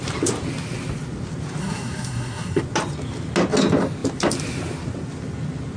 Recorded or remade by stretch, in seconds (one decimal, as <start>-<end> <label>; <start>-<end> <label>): 0.0-1.6 recorded; 1.6-2.6 remade; 2.6-5.8 recorded